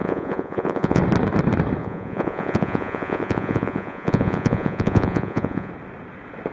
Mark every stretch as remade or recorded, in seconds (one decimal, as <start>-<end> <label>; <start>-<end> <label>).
0.0-1.0 remade; 1.0-1.8 recorded; 1.8-5.7 remade; 5.7-6.5 recorded